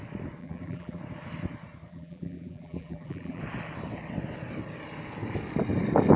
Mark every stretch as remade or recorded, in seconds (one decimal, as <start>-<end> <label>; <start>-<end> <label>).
0.0-0.4 recorded; 0.4-1.0 remade; 1.0-1.9 recorded; 1.9-3.4 remade; 3.4-6.2 recorded